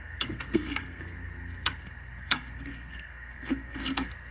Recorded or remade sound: remade